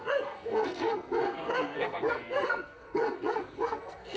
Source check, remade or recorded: remade